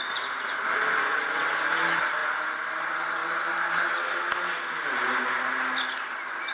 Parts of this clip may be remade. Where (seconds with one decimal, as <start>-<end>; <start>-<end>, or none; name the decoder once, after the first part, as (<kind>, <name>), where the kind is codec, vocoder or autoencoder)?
none